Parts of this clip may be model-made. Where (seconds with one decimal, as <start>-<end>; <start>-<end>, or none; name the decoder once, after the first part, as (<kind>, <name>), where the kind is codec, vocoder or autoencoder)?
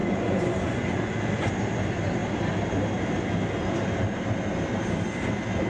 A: 0.0-1.5 (vocoder, Vocos)